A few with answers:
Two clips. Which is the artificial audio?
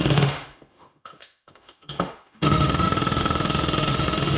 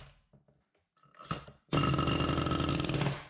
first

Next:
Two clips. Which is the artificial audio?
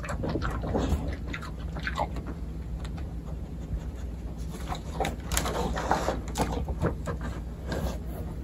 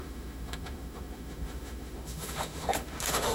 second